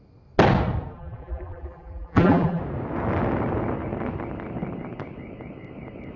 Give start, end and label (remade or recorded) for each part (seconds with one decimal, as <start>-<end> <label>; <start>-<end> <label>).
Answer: 0.0-0.9 recorded; 0.9-2.6 remade; 2.6-6.2 recorded

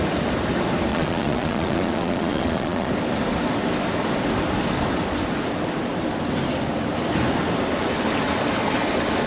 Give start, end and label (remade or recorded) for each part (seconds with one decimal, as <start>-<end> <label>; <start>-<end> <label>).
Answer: 0.0-0.9 recorded; 0.9-2.9 remade; 2.9-9.3 recorded

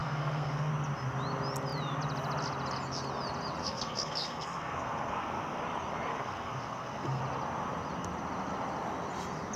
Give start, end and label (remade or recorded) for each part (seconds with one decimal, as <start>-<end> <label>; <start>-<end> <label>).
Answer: 0.0-0.7 remade; 0.7-3.6 recorded; 3.6-5.6 remade; 5.6-6.1 recorded; 6.1-7.2 remade; 7.2-9.6 recorded

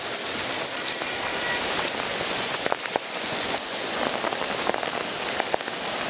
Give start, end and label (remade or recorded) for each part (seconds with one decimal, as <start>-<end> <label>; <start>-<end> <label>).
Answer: 0.0-2.1 recorded; 2.1-4.0 remade; 4.0-6.1 recorded

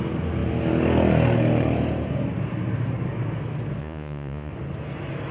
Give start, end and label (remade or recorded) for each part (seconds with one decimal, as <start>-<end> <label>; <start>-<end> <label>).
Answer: 0.0-3.8 recorded; 3.8-4.5 remade; 4.5-5.3 recorded

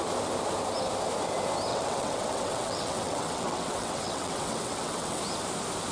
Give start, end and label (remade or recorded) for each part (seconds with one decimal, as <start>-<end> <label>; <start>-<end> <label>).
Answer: 0.0-1.7 recorded; 1.7-5.2 remade; 5.2-5.9 recorded

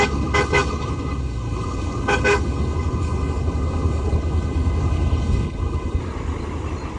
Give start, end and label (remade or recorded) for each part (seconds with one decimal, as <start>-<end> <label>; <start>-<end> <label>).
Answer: 0.0-6.0 remade; 6.0-7.0 recorded

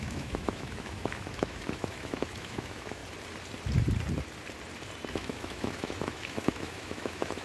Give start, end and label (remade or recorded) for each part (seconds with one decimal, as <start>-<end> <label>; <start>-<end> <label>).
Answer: 0.0-3.0 remade; 3.0-5.1 recorded; 5.1-7.4 remade